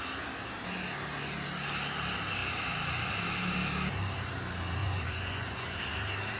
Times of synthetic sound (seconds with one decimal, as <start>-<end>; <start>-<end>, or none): 4.8-5.8